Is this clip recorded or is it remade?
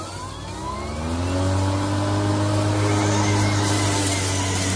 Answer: recorded